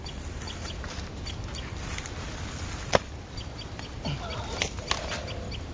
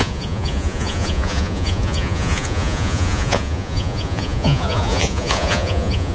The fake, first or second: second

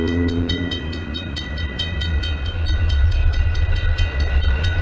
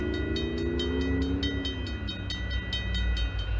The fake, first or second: first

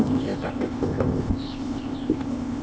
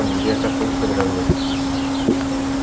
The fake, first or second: first